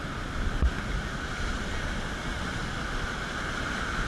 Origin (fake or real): real